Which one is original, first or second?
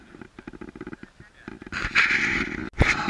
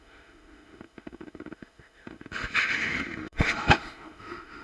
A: first